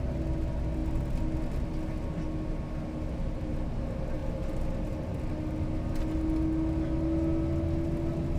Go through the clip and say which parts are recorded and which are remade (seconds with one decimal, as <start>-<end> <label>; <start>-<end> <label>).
0.0-8.4 recorded